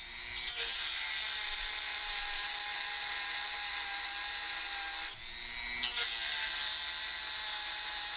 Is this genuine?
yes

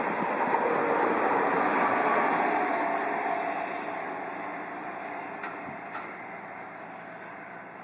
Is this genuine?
yes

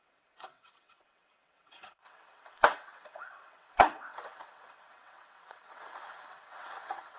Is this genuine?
no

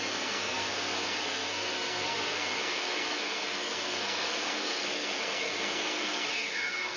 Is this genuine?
no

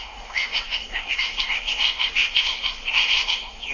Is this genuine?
no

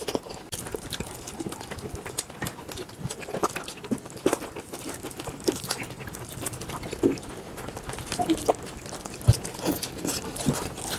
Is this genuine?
yes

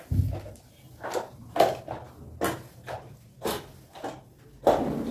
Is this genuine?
yes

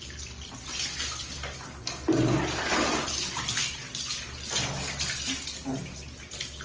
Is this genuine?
yes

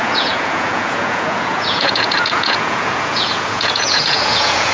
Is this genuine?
no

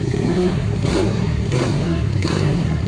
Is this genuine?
no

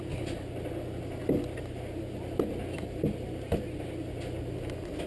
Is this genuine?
yes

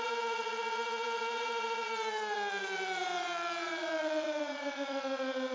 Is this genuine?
no